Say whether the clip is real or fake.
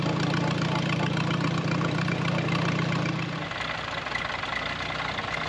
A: real